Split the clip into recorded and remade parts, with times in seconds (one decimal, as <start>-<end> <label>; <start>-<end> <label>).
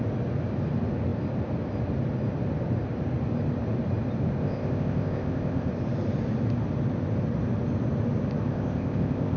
0.0-4.4 recorded; 4.4-5.7 remade; 5.7-8.5 recorded; 8.5-9.4 remade